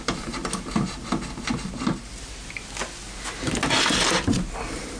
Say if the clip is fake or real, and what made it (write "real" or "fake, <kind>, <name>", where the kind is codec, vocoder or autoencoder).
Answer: real